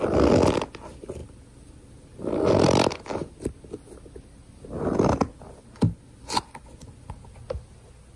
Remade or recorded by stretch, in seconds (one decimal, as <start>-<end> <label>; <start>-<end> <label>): 0.0-8.2 recorded